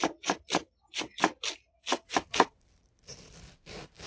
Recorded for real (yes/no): yes